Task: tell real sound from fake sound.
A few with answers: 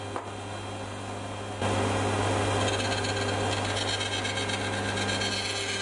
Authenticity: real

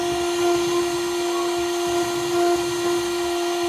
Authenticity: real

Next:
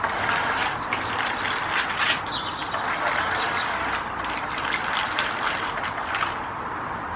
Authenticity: real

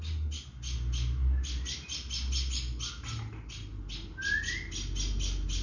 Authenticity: real